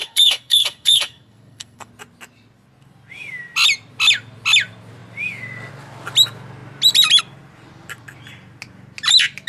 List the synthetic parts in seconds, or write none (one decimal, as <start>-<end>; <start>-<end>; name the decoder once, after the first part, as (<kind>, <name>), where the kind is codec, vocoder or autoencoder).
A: 0.0-1.9 (codec, SNAC)